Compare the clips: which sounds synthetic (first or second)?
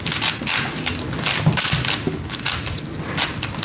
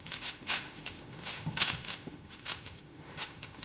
second